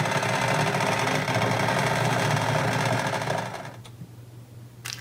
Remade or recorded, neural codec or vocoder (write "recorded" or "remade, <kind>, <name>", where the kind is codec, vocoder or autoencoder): recorded